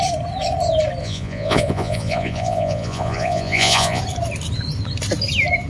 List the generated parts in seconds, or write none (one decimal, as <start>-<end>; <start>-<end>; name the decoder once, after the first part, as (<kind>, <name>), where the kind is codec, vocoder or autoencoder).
1.0-4.0 (vocoder, Vocos)